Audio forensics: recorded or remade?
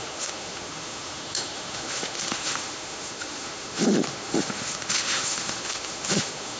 remade